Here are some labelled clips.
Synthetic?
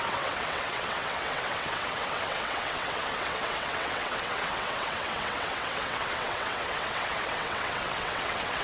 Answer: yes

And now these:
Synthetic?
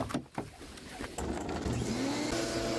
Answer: no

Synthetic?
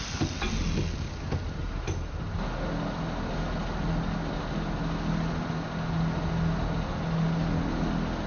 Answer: no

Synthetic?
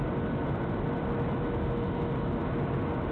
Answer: no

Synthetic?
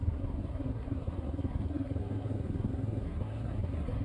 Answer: yes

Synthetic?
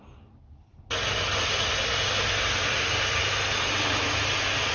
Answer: no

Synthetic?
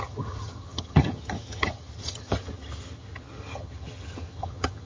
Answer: yes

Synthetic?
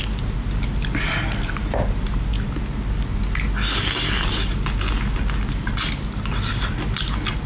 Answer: no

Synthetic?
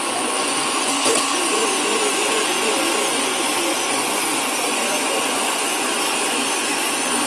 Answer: yes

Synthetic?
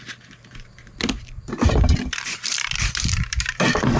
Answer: yes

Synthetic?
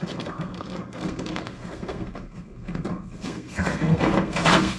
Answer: yes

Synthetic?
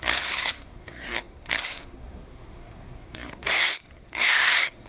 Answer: yes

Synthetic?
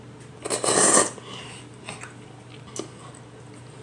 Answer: no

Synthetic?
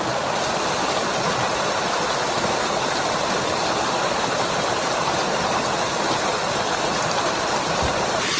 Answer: no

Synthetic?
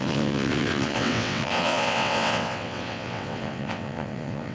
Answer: yes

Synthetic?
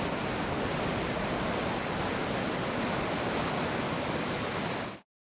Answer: no